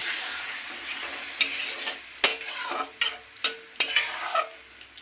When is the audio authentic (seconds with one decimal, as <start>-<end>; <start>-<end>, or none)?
0.0-5.0